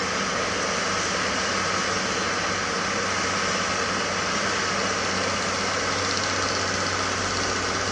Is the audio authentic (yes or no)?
yes